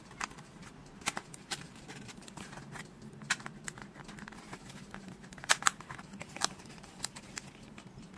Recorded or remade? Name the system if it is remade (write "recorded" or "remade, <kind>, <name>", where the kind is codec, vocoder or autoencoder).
remade, vocoder, BigVGAN v2